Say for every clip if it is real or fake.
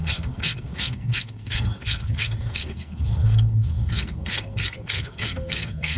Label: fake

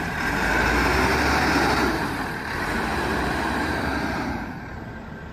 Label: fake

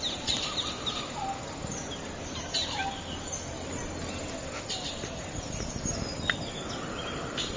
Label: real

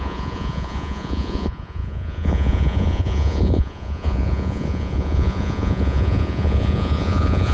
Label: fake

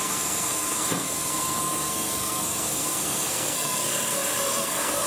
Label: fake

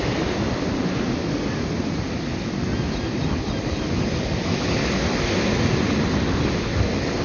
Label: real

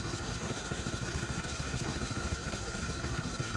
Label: fake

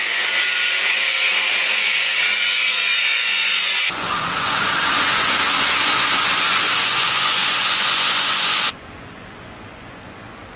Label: fake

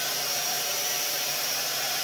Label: fake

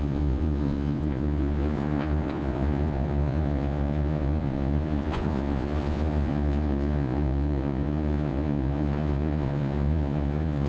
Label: fake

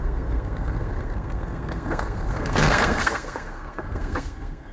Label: fake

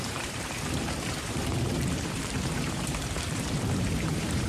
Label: fake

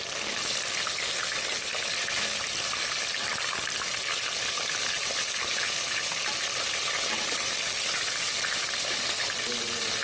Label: real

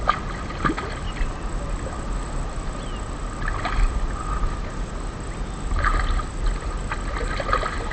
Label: real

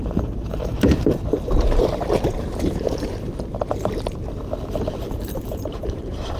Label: fake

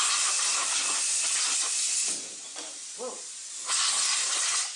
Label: real